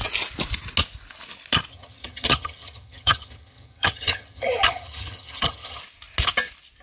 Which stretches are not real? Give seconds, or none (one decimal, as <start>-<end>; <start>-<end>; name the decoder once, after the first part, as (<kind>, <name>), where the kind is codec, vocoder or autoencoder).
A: 1.7-5.8 (vocoder, HiFi-GAN)